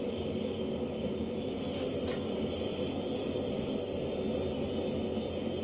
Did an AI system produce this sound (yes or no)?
no